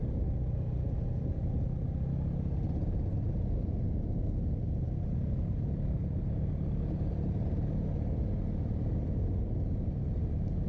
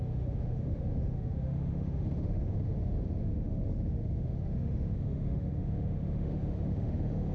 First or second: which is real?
first